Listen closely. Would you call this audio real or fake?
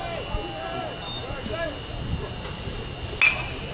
real